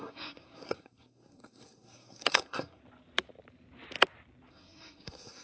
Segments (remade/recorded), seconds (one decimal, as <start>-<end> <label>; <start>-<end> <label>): 0.0-2.8 remade; 2.8-4.5 recorded; 4.5-5.4 remade